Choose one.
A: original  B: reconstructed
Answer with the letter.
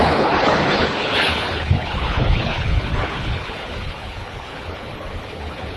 B